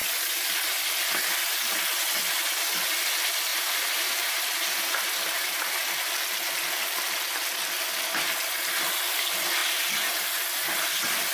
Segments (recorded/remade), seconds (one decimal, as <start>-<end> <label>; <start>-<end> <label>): 0.0-3.5 recorded; 3.5-6.1 remade; 6.1-11.3 recorded